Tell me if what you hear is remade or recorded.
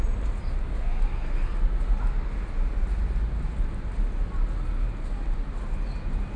recorded